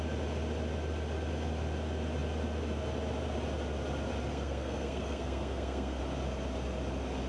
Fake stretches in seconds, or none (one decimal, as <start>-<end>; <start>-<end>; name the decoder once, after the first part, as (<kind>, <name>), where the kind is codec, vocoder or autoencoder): 4.3-6.0 (codec, SNAC)